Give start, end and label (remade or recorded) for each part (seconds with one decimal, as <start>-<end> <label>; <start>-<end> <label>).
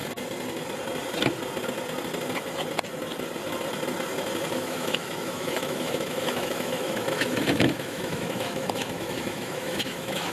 0.0-4.5 recorded; 4.5-10.3 remade